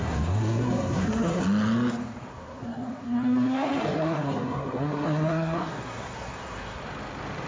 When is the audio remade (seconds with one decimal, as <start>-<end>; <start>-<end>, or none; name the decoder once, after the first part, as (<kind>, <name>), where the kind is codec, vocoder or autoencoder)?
0.0-1.4 (codec, SNAC); 2.3-6.8